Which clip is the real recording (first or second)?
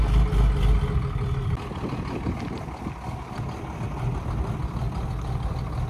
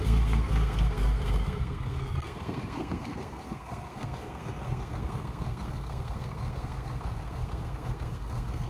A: first